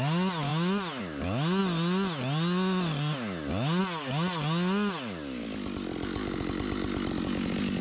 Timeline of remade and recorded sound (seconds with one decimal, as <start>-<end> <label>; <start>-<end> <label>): 0.0-7.8 recorded